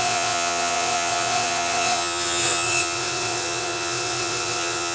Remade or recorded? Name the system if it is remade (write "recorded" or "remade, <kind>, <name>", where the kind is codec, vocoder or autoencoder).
remade, vocoder, WaveNeXt